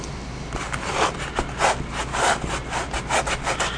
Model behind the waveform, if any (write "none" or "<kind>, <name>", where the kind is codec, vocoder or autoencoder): none